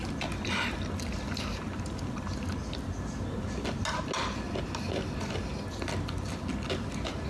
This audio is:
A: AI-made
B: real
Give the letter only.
B